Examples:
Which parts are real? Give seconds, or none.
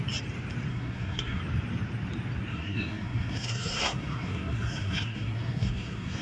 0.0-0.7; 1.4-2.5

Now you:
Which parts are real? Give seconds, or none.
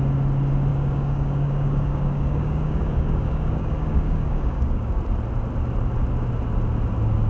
0.0-0.7; 5.0-7.3